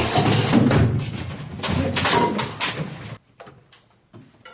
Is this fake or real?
real